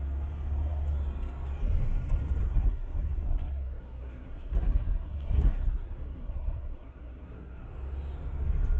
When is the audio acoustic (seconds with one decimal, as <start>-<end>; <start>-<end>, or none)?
0.0-2.4; 7.7-8.8